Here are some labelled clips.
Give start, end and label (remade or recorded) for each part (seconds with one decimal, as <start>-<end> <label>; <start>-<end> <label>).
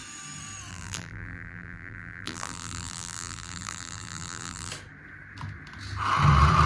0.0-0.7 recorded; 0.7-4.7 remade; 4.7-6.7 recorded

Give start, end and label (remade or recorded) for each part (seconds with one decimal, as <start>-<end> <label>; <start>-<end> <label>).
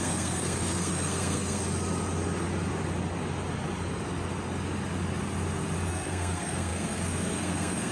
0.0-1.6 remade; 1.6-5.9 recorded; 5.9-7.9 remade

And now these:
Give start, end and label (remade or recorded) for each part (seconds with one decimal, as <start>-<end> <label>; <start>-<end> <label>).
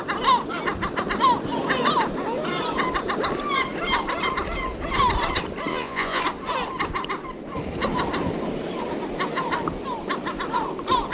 0.0-5.7 recorded; 5.7-6.2 remade; 6.2-11.1 recorded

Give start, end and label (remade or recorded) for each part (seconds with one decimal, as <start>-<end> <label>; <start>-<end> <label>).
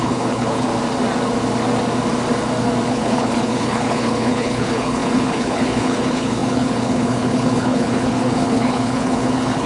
0.0-0.7 remade; 0.7-2.9 recorded; 2.9-9.7 remade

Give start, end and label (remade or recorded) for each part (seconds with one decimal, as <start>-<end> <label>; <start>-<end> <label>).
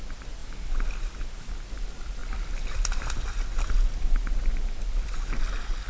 0.0-5.9 recorded